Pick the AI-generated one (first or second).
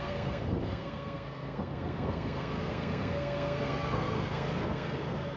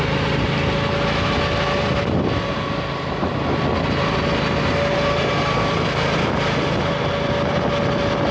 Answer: first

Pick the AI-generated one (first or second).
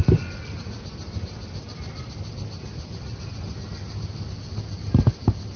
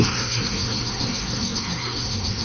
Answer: second